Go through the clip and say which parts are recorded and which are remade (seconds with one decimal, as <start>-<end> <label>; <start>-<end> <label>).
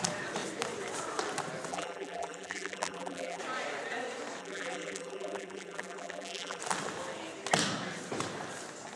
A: 0.0-1.7 recorded; 1.7-3.4 remade; 3.4-4.4 recorded; 4.4-6.6 remade; 6.6-9.0 recorded